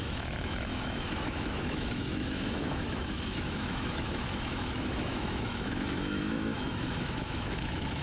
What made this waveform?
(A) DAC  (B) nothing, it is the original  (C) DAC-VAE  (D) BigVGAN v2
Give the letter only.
C